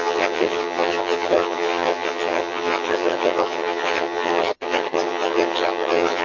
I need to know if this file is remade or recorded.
remade